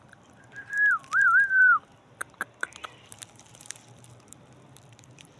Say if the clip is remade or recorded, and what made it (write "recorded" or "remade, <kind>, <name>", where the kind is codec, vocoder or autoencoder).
remade, vocoder, BigVGAN v2